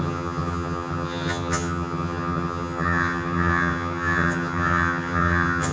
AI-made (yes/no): yes